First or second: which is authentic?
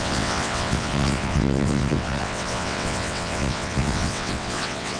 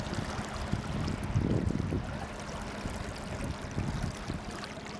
second